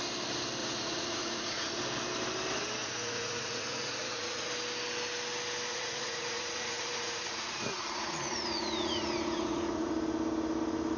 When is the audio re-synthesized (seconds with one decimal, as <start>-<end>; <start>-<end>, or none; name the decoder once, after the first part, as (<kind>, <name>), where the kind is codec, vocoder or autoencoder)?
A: 0.6-1.8 (vocoder, Vocos); 2.8-4.5; 5.7-9.9